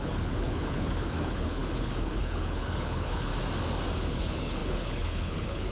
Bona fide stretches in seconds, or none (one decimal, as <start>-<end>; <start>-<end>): 3.3-4.1